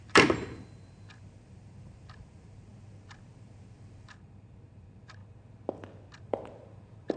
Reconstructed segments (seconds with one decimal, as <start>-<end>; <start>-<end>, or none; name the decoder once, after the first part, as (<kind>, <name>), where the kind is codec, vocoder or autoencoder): 0.0-2.7 (vocoder, BigVGAN v2); 3.3-5.2; 6.2-7.2